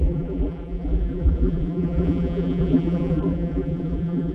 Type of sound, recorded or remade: remade